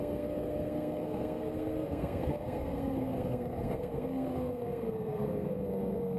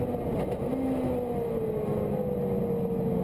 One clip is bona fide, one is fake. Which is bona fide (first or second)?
second